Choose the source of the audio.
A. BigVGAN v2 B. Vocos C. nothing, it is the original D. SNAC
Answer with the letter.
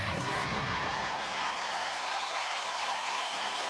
D